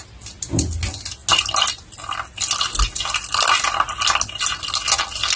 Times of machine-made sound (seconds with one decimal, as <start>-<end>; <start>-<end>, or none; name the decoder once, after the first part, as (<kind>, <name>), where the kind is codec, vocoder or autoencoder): none